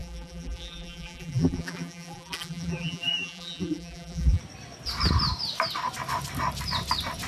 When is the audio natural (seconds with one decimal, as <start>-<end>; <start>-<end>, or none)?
4.4-7.3